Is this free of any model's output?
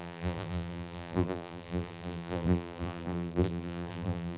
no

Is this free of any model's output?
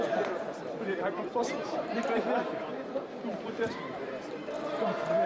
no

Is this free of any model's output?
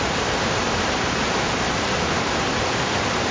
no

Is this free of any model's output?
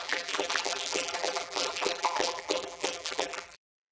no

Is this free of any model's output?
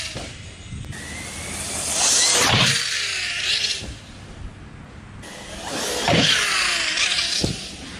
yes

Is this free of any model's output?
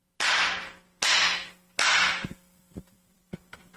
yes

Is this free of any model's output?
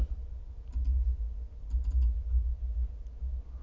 yes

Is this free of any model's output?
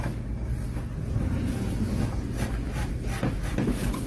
yes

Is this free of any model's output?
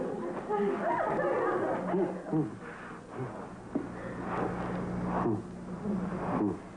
yes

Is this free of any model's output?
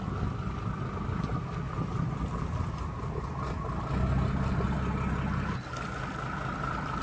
yes